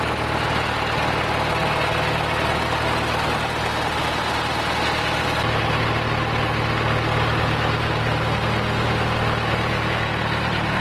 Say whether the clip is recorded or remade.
recorded